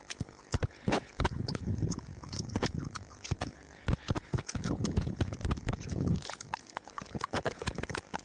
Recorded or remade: remade